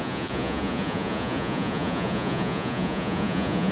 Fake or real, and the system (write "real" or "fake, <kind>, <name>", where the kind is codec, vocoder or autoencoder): fake, vocoder, Vocos